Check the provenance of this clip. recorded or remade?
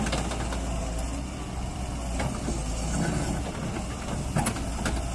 recorded